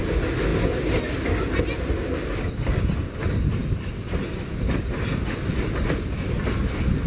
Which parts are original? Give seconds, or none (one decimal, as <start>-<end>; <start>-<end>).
0.0-7.1